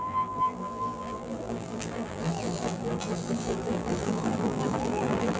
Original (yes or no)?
no